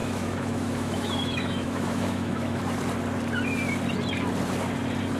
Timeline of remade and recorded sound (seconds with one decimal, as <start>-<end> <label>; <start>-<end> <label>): 0.0-2.6 remade; 2.6-5.2 recorded